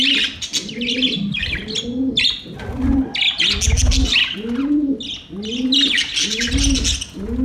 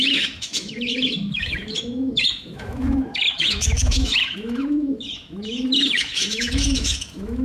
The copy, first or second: second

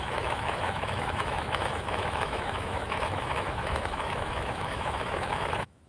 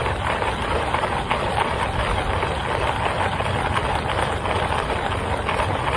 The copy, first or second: first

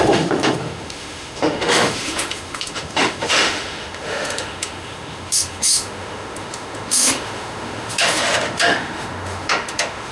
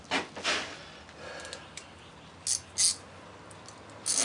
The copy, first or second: first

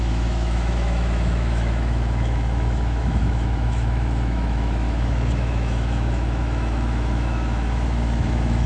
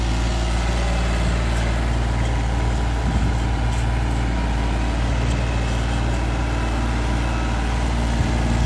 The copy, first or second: first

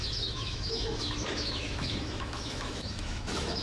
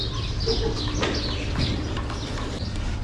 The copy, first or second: first